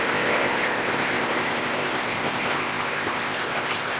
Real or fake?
fake